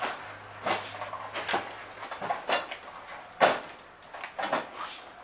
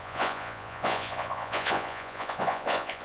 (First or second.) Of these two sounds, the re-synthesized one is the second